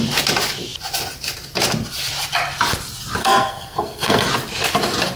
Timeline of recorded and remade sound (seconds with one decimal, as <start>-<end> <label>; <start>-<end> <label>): 0.0-3.2 recorded; 3.2-4.3 remade; 4.3-5.2 recorded